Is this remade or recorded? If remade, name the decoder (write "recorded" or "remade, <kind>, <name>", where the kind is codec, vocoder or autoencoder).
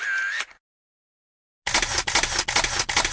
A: recorded